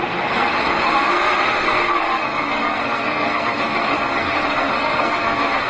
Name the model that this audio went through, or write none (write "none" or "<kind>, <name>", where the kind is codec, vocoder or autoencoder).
codec, SNAC